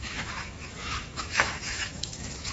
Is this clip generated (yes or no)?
yes